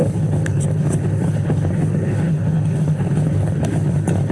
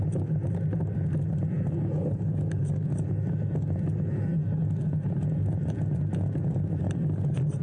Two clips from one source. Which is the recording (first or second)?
second